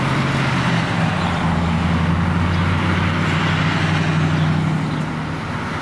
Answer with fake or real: real